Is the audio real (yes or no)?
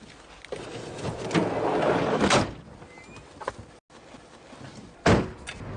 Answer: yes